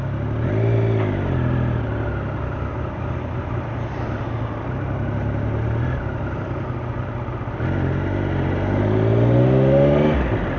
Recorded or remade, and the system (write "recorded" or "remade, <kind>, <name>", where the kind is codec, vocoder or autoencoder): recorded